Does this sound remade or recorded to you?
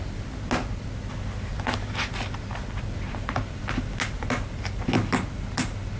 recorded